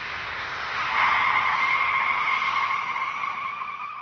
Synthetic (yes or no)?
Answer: no